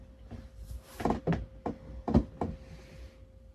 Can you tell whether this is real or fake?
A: real